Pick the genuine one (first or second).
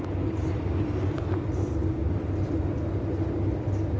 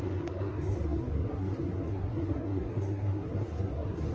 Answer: first